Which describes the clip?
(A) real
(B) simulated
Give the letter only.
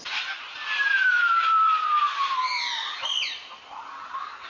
B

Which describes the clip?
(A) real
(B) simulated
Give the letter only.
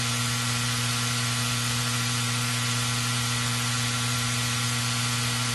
B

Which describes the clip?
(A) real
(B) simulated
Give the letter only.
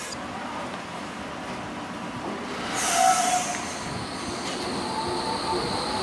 A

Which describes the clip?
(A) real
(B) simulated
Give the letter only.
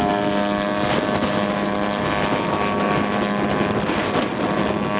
A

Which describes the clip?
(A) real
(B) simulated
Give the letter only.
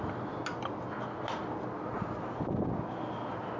A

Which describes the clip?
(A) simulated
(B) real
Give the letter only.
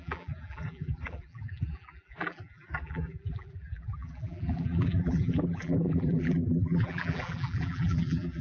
A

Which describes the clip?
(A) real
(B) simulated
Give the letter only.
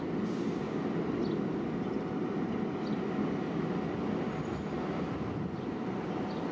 A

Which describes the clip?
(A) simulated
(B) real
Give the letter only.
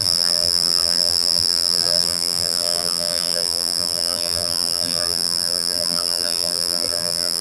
A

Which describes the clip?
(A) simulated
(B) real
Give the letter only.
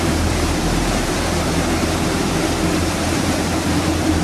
A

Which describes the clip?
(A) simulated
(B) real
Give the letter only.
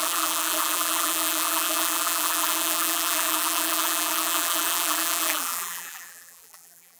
A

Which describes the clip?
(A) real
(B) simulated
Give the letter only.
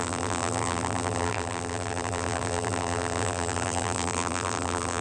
B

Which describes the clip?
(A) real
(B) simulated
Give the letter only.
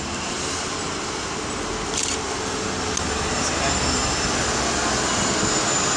A